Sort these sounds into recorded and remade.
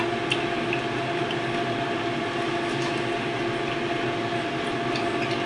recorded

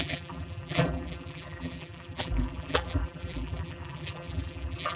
remade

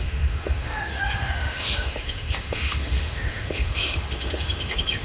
remade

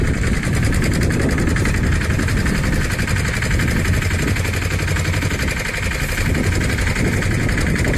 recorded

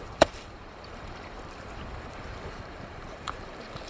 remade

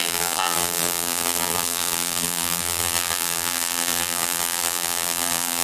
remade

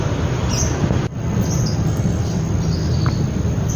recorded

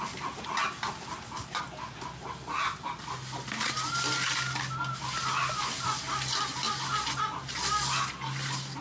recorded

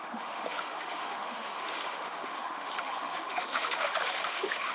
remade